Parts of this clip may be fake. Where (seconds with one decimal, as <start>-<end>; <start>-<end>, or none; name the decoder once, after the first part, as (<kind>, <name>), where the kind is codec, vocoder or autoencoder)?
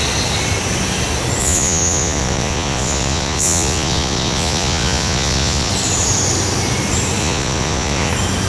1.4-5.7 (vocoder, Vocos); 7.2-8.1